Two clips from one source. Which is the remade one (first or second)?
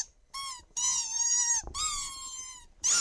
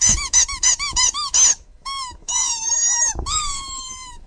second